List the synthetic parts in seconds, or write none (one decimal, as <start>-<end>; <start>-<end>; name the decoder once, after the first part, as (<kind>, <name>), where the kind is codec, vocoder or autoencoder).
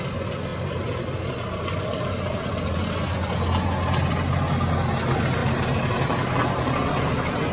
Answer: none